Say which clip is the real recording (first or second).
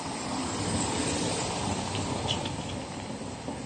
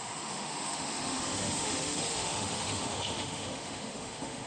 first